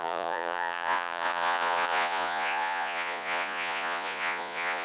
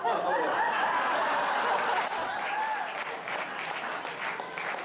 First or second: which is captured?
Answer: second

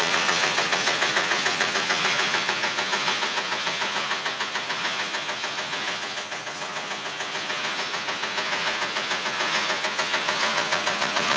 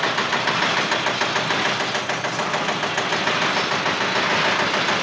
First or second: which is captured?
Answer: second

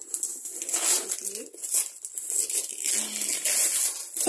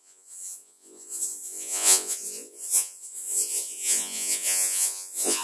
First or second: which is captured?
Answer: first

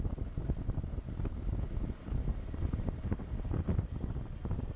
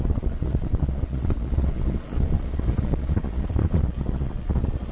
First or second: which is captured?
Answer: first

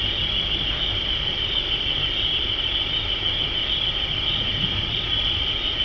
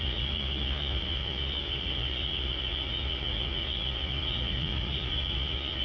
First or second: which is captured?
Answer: first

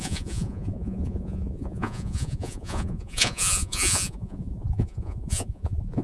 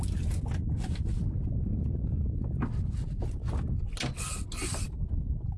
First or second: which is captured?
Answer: second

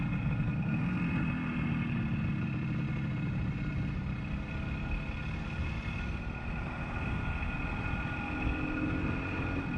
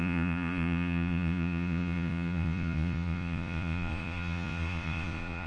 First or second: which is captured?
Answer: first